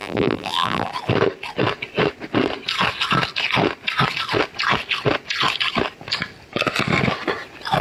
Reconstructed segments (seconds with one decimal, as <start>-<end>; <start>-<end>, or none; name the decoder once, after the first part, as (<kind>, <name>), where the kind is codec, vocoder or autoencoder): 0.0-0.9 (vocoder, BigVGAN v2)